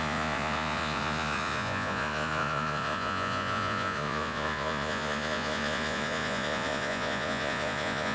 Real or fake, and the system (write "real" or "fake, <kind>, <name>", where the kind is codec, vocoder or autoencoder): fake, vocoder, Vocos